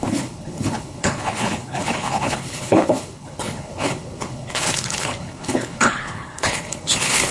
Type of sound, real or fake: fake